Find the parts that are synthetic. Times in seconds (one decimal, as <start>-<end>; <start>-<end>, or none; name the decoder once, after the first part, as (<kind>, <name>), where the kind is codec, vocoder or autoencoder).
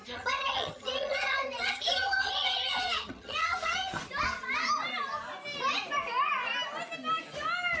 0.0-4.1 (vocoder, HiFi-GAN)